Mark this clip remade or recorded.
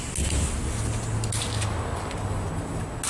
recorded